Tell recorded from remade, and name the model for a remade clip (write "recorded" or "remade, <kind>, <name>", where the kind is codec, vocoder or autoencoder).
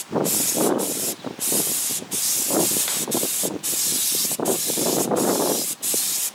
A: recorded